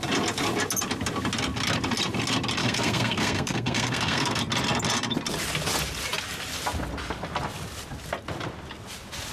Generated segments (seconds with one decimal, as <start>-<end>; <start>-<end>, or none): 2.6-4.4